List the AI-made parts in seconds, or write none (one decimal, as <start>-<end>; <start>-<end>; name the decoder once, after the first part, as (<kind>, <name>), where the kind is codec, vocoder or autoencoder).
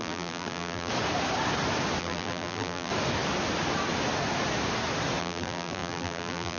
0.0-0.9 (vocoder, BigVGAN v2); 2.0-2.9; 5.2-6.6